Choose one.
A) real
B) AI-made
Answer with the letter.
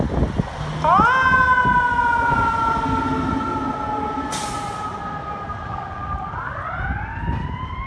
A